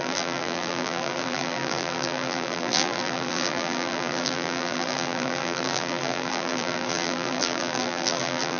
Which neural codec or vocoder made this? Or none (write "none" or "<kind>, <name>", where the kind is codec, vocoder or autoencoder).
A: vocoder, BigVGAN v2